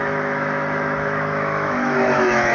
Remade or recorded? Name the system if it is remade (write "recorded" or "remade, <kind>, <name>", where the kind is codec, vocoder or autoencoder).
remade, autoencoder, DAC-VAE